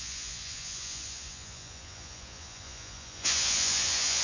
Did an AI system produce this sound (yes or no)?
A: yes